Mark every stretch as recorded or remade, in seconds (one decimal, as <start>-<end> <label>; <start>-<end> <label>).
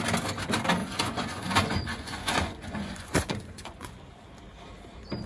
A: 0.0-0.8 recorded; 0.8-4.0 remade; 4.0-5.3 recorded